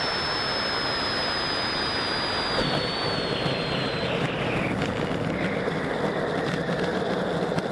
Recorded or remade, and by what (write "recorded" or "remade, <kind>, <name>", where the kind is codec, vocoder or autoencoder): recorded